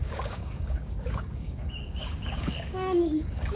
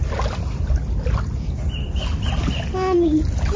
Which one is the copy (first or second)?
first